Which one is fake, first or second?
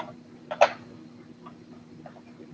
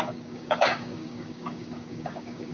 second